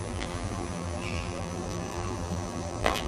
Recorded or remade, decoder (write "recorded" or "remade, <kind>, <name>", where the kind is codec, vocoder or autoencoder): remade, vocoder, BigVGAN v2